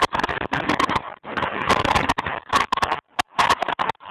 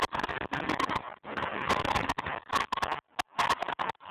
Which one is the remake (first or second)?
first